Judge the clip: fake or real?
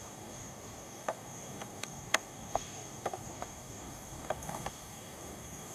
fake